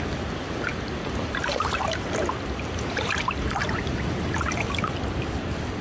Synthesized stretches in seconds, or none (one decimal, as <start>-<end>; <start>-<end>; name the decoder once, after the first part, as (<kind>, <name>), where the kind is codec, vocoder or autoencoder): none